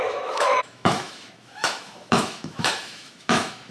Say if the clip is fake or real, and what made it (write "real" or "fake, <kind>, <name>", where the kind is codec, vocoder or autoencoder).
fake, autoencoder, DAC-VAE